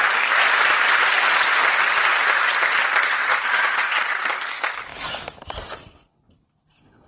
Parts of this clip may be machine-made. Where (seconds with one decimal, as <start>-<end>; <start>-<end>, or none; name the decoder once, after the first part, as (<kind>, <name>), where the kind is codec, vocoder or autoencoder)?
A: 3.2-4.0 (vocoder, Vocos)